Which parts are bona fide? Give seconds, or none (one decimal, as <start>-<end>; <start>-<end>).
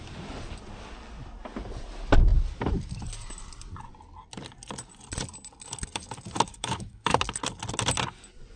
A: 0.0-6.5; 7.2-8.6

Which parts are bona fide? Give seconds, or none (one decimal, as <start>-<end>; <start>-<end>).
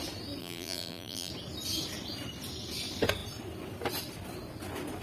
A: 0.0-0.4; 1.3-5.0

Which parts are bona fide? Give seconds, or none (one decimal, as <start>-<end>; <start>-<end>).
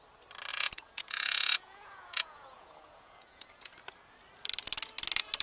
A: 0.0-0.5; 3.7-5.4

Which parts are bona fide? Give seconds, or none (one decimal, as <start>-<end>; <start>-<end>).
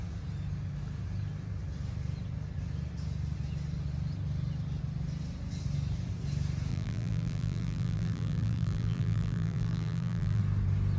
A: 0.0-6.7; 10.4-11.0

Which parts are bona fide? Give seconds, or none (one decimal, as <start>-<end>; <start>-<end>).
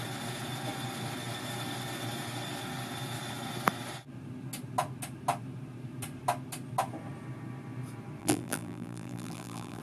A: 0.0-8.2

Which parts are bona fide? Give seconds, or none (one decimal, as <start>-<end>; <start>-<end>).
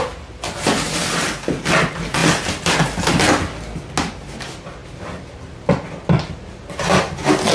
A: 0.0-7.5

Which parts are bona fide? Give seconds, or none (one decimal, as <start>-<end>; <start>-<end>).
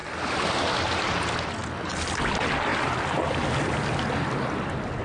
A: 0.0-5.0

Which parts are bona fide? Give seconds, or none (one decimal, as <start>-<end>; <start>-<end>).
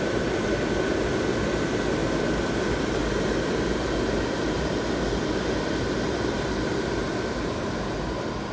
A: 0.0-7.0; 7.7-8.5